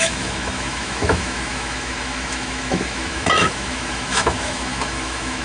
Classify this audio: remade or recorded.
remade